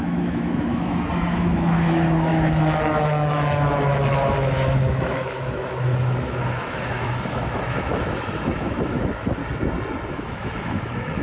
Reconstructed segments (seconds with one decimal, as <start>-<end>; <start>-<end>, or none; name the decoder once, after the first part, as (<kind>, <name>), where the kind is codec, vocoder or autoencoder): 0.0-9.4 (autoencoder, DAC-VAE); 10.1-11.2